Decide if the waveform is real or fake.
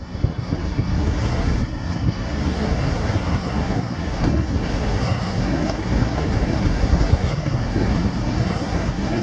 fake